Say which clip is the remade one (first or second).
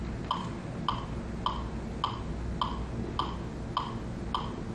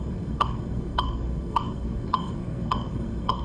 second